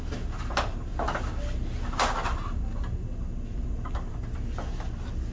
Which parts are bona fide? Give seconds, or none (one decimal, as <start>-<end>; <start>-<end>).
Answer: 0.0-5.3